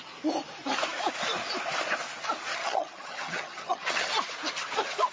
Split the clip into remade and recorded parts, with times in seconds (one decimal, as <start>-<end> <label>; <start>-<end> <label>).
0.0-2.5 recorded; 2.5-4.1 remade; 4.1-5.1 recorded